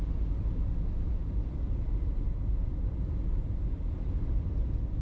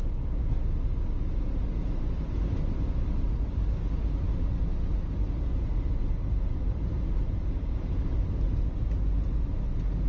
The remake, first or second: first